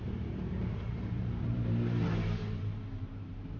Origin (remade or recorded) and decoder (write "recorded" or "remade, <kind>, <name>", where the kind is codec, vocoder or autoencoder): remade, vocoder, BigVGAN v2